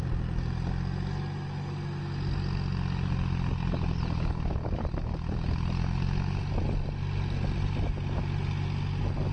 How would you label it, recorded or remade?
recorded